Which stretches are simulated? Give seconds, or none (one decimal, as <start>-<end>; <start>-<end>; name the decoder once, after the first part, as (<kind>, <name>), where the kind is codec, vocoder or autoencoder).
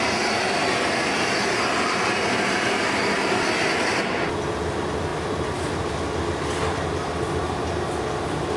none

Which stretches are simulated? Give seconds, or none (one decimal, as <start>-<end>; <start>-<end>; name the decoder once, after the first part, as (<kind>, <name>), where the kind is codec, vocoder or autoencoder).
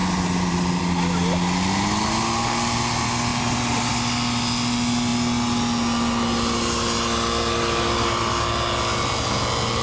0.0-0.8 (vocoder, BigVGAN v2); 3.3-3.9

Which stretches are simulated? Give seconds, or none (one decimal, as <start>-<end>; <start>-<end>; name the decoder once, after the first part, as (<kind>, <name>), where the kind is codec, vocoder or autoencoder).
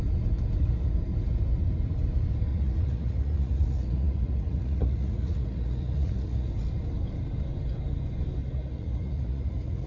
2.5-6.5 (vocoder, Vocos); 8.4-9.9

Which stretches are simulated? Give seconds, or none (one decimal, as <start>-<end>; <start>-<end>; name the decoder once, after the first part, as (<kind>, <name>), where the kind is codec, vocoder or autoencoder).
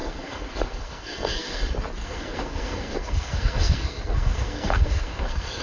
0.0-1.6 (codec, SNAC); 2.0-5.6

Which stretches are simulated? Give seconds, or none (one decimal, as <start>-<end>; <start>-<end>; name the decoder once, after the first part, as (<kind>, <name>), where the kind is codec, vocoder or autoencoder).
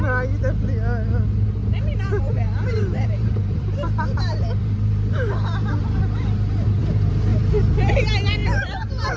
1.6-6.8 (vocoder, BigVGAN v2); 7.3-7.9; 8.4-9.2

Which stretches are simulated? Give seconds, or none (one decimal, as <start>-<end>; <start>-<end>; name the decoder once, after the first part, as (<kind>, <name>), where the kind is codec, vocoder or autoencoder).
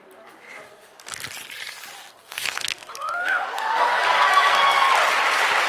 2.1-4.9 (codec, SNAC)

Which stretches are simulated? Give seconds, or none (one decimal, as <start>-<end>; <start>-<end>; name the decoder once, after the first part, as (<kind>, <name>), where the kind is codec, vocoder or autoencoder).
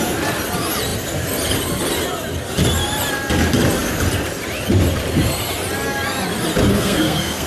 6.7-7.5 (codec, SNAC)